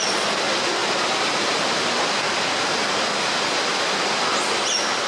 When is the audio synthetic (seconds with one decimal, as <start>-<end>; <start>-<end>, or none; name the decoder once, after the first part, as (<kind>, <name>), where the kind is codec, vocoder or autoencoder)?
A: 0.8-2.0 (vocoder, BigVGAN v2)